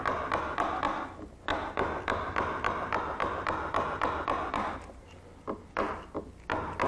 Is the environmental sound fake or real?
real